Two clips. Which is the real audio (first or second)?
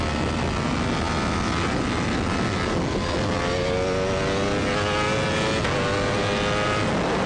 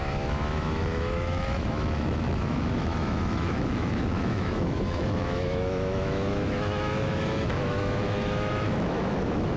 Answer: first